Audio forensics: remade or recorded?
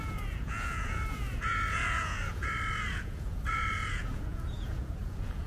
remade